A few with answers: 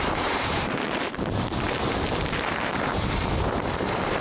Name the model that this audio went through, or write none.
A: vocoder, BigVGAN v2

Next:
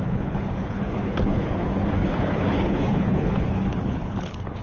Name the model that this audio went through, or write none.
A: codec, HILCodec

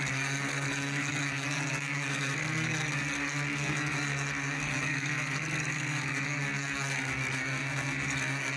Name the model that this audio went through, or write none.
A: codec, SNAC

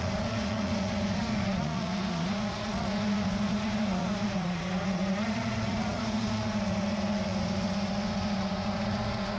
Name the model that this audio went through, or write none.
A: vocoder, Vocos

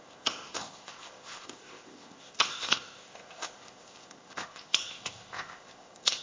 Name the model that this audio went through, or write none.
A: codec, ZipCodec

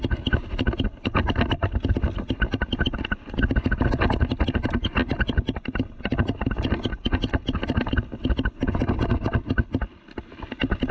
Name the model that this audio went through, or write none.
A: none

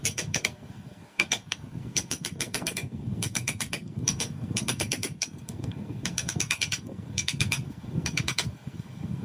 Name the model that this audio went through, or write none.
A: codec, SNAC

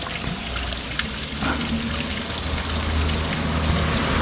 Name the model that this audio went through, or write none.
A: none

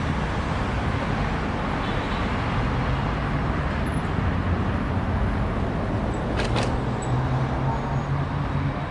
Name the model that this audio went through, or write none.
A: none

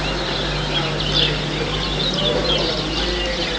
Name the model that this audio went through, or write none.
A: none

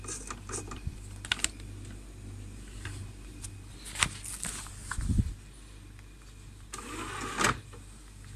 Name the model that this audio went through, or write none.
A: none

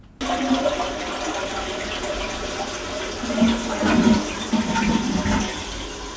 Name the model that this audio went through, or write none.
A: none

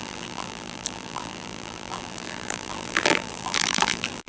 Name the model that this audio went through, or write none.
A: vocoder, BigVGAN v2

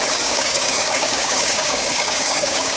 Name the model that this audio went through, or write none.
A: codec, DAC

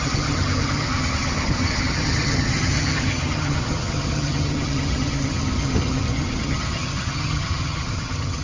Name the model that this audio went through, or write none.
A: vocoder, HiFi-GAN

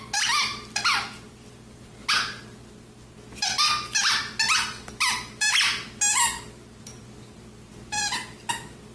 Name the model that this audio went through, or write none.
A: none